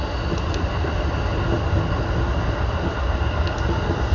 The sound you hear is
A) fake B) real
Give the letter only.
B